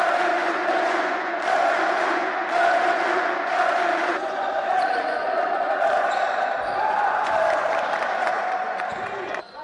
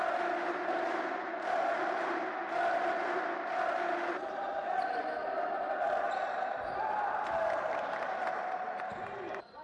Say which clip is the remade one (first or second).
first